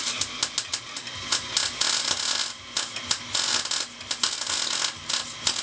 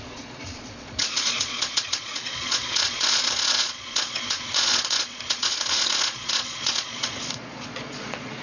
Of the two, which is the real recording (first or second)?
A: first